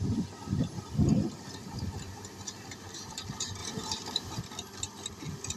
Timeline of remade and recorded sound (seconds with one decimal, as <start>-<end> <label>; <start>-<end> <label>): 0.0-1.6 recorded; 1.6-3.2 remade; 3.2-3.6 recorded; 3.6-4.4 remade; 4.4-5.6 recorded